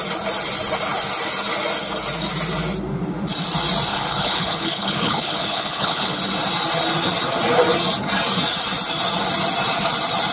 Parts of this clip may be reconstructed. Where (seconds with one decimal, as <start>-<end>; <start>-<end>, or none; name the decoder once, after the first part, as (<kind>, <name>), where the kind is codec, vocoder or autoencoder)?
3.9-6.2 (codec, HILCodec)